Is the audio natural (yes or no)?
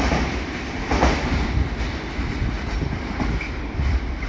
no